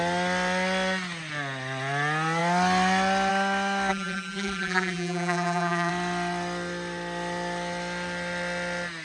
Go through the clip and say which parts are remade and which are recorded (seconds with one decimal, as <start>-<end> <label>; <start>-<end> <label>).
0.0-3.9 recorded; 3.9-5.9 remade; 5.9-9.0 recorded

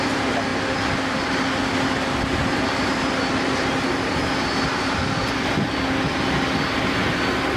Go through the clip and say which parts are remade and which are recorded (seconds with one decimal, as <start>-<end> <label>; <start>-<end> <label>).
0.0-7.6 recorded

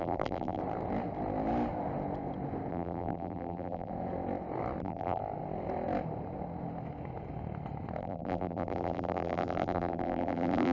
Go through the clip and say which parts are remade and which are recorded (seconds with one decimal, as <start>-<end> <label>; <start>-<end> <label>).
0.0-0.6 remade; 0.6-2.7 recorded; 2.7-3.9 remade; 3.9-4.8 recorded; 4.8-5.2 remade; 5.2-8.0 recorded; 8.0-10.7 remade

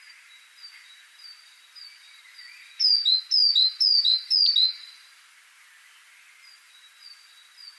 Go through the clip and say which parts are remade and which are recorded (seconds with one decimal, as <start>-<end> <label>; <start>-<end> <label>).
0.0-2.7 remade; 2.7-4.8 recorded; 4.8-7.8 remade

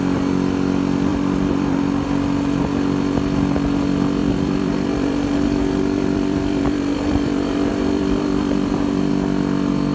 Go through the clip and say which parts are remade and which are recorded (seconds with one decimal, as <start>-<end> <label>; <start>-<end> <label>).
0.0-1.1 recorded; 1.1-1.8 remade; 1.8-4.2 recorded; 4.2-9.1 remade; 9.1-9.9 recorded